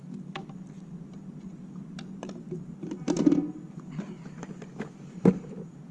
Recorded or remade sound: recorded